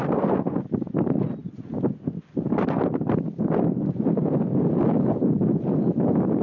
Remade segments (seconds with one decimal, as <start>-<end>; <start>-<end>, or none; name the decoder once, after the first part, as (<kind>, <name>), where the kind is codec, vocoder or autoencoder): none